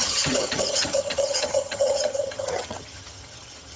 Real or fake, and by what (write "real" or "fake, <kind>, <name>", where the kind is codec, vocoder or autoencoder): fake, vocoder, HiFi-GAN